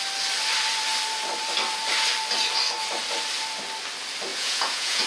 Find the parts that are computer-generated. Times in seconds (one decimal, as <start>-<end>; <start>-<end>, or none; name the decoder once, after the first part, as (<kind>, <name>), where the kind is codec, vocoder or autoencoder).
4.3-5.1 (vocoder, Vocos)